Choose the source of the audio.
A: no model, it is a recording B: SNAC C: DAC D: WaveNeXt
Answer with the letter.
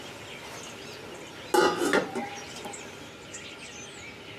A